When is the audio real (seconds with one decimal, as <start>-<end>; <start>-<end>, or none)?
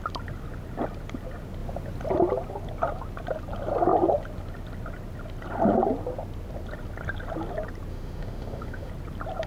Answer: 0.0-7.9; 8.9-9.5